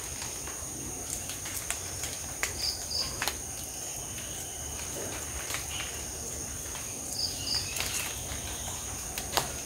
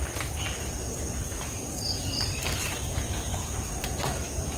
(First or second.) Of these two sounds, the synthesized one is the second